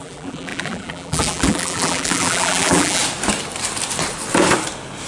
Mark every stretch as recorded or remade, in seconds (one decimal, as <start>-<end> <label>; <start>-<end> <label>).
0.0-3.0 remade; 3.0-5.1 recorded